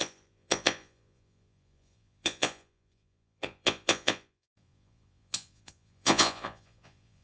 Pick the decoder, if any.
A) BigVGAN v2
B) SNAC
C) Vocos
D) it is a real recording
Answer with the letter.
C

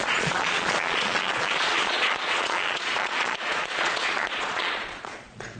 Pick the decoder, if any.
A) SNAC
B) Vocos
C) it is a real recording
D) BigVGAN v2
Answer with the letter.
B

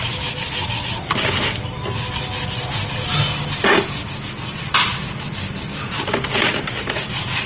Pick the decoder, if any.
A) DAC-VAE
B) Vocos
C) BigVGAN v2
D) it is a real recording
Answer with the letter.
D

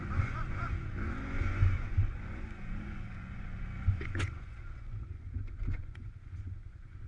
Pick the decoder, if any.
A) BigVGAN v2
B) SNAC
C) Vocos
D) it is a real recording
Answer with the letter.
C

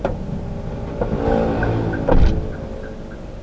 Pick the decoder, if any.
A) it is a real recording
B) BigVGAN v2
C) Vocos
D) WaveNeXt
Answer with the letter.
A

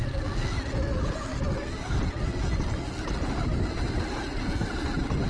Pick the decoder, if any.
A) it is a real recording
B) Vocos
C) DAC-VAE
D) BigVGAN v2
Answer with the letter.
A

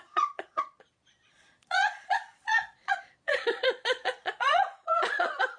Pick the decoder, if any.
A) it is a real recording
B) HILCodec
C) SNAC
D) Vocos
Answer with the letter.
D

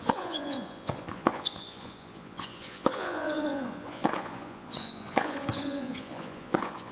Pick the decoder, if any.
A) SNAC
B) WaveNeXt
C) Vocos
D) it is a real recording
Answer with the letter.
C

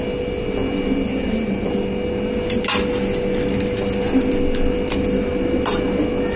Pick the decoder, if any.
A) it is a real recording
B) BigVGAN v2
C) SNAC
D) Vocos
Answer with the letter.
A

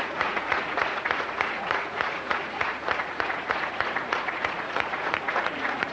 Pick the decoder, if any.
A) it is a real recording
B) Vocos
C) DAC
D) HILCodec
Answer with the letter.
B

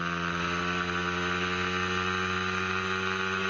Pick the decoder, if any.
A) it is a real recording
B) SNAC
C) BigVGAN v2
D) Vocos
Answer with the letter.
A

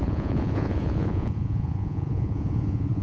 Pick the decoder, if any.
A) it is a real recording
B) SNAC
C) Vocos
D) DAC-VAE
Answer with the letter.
C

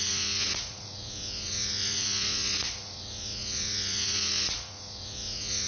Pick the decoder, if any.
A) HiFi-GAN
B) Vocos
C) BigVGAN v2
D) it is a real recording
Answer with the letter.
B